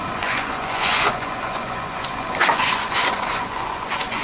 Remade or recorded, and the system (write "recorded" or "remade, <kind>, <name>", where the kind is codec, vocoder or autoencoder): remade, vocoder, Vocos